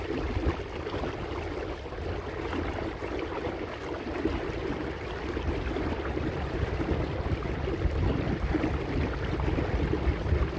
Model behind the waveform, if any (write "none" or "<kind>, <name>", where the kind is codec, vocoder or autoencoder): none